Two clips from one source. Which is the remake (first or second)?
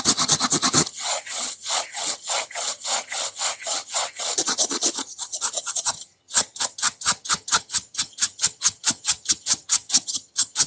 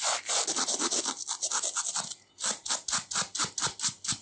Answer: first